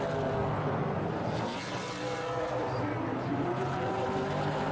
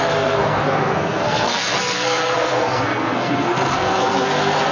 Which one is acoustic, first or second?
first